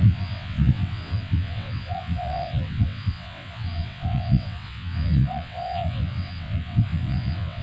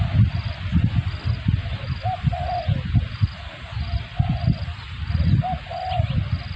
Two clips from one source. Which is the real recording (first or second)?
second